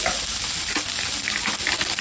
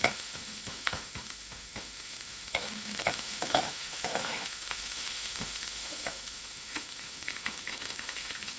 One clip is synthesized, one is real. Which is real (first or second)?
first